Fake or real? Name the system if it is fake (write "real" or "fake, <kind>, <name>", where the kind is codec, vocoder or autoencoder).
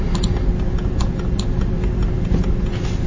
real